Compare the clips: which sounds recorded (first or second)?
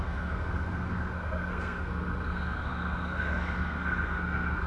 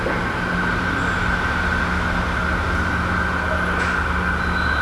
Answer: second